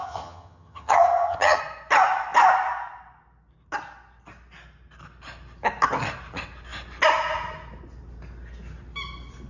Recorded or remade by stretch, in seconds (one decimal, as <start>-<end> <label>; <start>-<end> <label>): 0.0-1.6 remade; 1.6-9.5 recorded